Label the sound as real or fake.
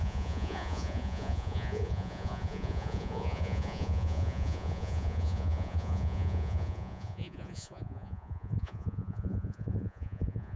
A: fake